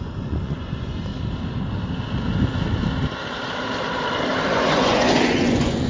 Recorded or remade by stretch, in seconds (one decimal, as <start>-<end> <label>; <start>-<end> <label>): 0.0-1.1 remade; 1.1-4.5 recorded; 4.5-5.9 remade